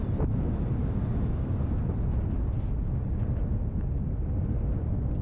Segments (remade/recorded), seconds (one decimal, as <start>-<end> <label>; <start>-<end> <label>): 0.0-0.8 recorded; 0.8-1.7 remade; 1.7-5.2 recorded